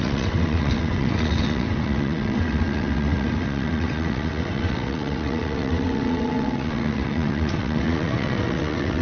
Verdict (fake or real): fake